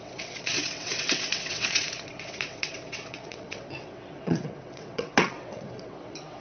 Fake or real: fake